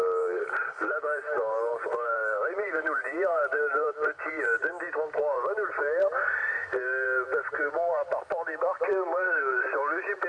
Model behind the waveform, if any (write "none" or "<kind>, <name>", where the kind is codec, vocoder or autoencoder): vocoder, BigVGAN v2